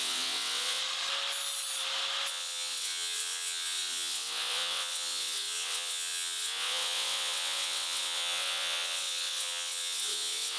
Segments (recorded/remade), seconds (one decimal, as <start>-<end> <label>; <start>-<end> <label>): 0.0-0.8 remade; 0.8-2.3 recorded; 2.3-10.6 remade